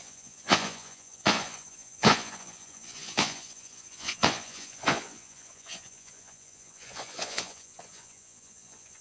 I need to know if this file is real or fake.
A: fake